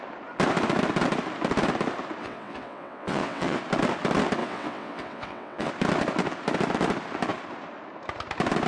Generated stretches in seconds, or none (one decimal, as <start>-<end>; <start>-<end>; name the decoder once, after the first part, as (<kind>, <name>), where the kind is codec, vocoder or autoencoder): 2.2-3.6 (vocoder, WaveNeXt); 4.4-5.7